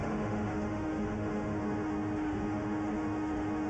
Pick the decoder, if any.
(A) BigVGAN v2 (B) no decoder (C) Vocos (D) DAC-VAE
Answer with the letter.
D